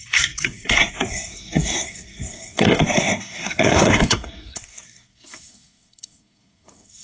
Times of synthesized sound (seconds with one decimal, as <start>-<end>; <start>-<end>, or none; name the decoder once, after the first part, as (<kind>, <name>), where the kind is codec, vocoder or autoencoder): 0.0-7.0 (codec, SNAC)